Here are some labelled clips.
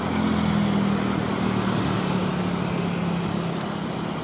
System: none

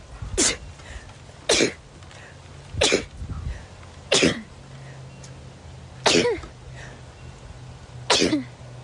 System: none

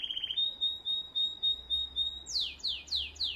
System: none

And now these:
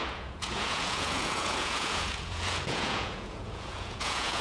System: vocoder, Vocos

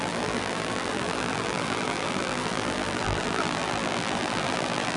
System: vocoder, BigVGAN v2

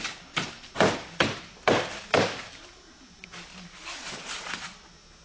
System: none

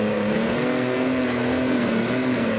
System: codec, SNAC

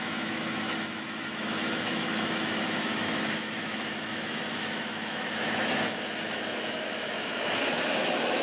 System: autoencoder, DAC-VAE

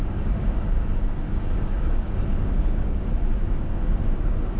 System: codec, DAC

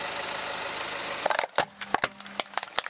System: none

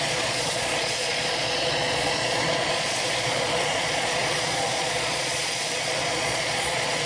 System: vocoder, Vocos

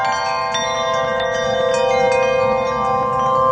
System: none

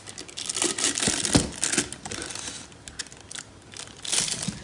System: none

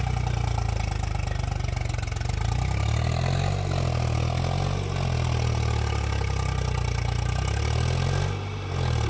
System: none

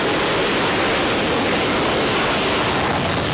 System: none